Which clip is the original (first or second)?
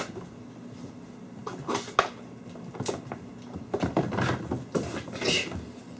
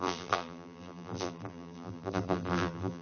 first